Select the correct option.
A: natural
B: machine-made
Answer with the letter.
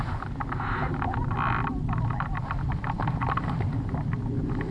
A